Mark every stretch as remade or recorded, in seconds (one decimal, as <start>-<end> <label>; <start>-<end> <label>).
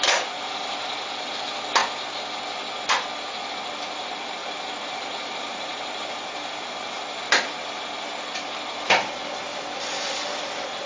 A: 0.0-4.4 recorded; 4.4-6.6 remade; 6.6-10.9 recorded